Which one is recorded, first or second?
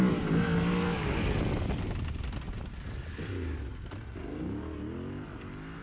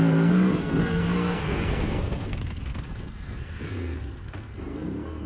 first